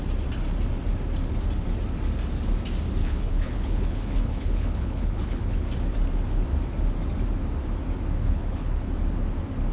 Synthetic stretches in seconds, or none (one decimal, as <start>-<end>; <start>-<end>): 3.0-5.7; 8.2-8.9